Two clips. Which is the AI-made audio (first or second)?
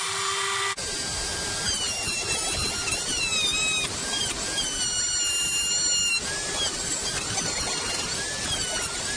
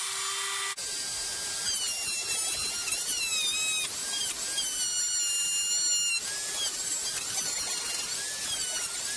first